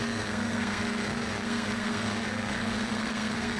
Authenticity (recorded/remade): remade